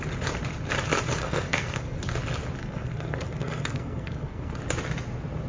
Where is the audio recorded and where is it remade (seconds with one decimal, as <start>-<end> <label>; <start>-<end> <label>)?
0.0-1.2 recorded; 1.2-2.0 remade; 2.0-2.6 recorded; 2.6-4.6 remade; 4.6-5.5 recorded